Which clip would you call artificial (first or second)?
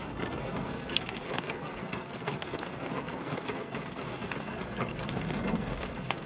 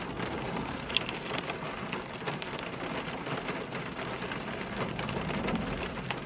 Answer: first